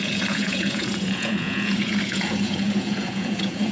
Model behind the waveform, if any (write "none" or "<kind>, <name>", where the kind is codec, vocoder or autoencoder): vocoder, Vocos